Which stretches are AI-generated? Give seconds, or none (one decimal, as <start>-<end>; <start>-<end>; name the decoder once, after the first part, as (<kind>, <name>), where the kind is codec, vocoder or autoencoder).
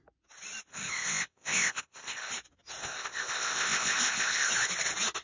0.7-2.3 (codec, ZipCodec); 2.8-4.5